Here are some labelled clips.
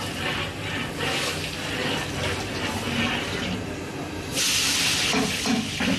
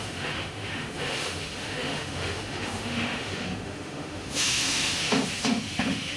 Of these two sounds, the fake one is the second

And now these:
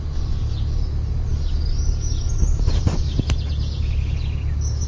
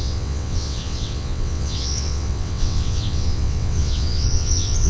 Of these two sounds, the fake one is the second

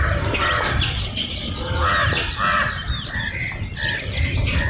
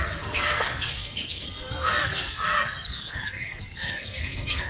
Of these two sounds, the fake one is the second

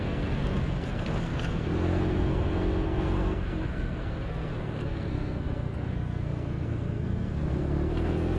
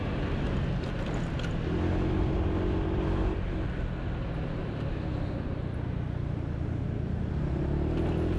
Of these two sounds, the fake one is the first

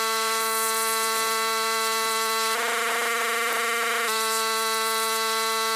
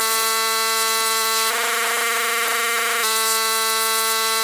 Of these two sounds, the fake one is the first